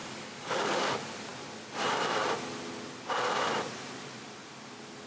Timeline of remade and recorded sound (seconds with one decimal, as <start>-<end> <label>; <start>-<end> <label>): 0.0-0.9 remade; 0.9-5.1 recorded